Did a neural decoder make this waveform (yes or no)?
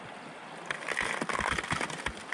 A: no